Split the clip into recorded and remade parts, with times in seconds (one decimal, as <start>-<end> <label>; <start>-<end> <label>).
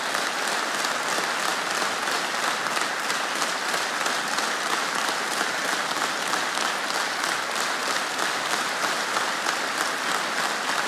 0.0-10.9 recorded